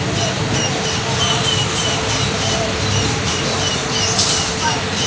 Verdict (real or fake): real